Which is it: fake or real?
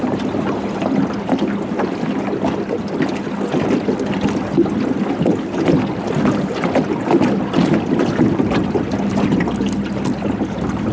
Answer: real